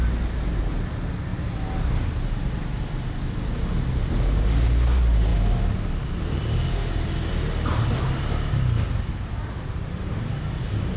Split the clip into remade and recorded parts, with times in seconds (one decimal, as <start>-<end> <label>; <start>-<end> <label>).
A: 0.0-11.0 recorded